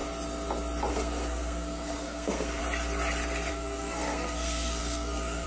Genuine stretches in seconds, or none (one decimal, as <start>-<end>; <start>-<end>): 0.0-0.9; 2.6-3.5